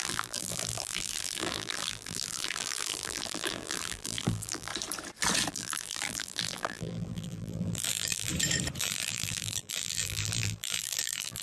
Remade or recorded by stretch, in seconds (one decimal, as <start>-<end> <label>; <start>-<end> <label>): 0.0-4.7 remade; 4.7-5.5 recorded; 5.5-8.3 remade; 8.3-8.8 recorded; 8.8-11.4 remade